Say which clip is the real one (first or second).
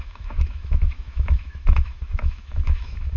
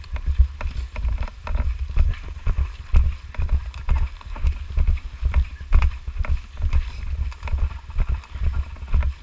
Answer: second